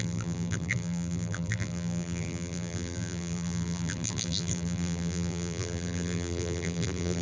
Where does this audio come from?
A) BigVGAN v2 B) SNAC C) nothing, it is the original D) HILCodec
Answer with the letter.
A